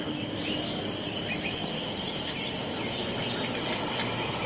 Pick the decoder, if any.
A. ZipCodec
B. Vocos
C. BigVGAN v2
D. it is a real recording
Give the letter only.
D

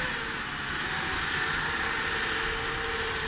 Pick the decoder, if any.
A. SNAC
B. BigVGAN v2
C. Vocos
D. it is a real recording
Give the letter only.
D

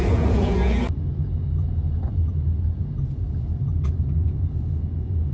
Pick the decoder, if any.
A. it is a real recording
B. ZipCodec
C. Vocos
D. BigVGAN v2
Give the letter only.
C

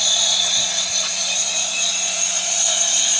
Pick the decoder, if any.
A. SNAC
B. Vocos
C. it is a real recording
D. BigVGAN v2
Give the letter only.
B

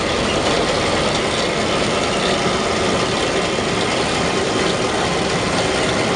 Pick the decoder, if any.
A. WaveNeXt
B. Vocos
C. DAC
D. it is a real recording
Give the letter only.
D